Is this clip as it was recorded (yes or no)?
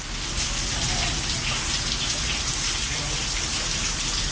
yes